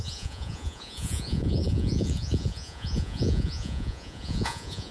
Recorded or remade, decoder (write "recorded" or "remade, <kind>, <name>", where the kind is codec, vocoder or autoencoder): remade, vocoder, Vocos